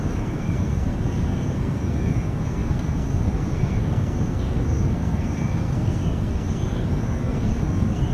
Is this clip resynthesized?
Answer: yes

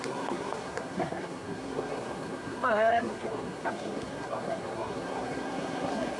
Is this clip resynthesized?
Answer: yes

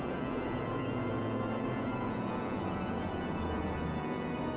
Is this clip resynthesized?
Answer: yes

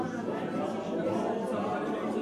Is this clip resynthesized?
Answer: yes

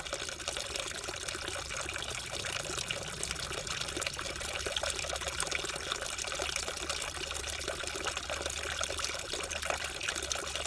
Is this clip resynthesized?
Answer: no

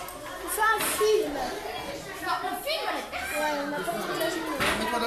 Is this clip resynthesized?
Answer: no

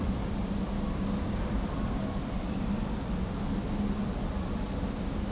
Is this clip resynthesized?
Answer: no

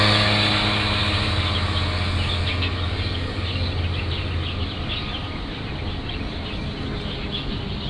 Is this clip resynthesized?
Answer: no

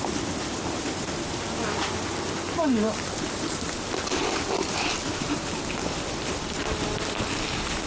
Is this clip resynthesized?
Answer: yes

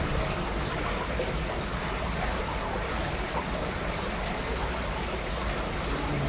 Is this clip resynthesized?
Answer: no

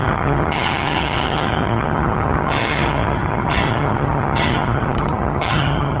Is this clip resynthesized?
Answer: yes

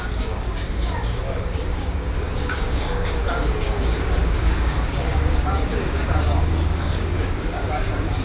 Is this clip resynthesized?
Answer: yes